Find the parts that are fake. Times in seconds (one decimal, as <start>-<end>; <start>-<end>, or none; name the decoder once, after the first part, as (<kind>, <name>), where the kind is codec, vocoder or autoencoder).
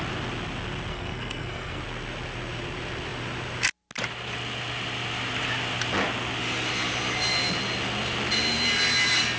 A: 0.9-1.8 (codec, SNAC)